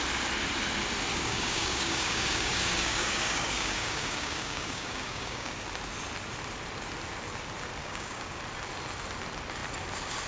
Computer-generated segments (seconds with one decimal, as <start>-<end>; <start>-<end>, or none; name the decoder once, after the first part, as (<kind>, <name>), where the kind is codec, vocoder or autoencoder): 1.1-5.5 (codec, DAC); 7.8-8.4

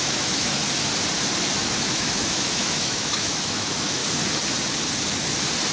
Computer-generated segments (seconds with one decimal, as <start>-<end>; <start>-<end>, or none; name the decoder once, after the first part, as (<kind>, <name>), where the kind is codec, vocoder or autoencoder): 0.0-0.6 (autoencoder, DAC-VAE); 1.6-4.0

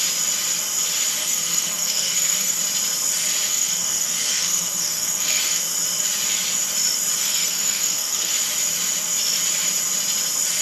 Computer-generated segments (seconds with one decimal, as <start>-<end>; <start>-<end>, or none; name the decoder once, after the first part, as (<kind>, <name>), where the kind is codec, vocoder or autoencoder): 1.2-2.6 (codec, SNAC); 3.5-5.6; 7.2-8.3

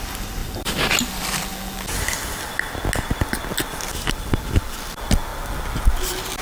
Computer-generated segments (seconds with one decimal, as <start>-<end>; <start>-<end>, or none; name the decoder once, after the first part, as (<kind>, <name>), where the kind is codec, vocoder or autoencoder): none